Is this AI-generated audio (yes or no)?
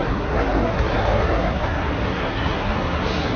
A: yes